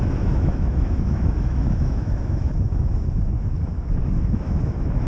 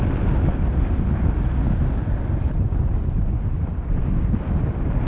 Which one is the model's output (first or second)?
first